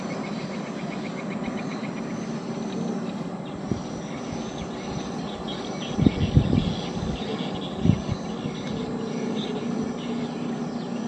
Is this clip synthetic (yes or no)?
no